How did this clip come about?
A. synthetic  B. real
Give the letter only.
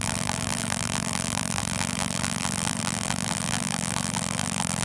A